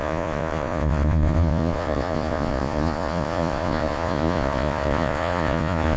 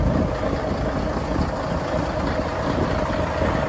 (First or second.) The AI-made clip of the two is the first